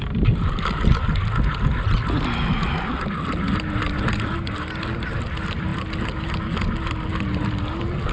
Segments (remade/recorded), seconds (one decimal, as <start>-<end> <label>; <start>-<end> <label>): 0.0-8.1 recorded